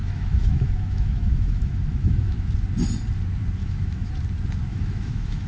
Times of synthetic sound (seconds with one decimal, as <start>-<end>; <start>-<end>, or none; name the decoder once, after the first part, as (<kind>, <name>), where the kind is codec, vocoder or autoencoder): 0.0-2.5 (autoencoder, DAC-VAE); 3.6-4.1; 4.7-5.5